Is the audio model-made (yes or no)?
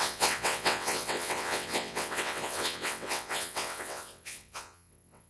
yes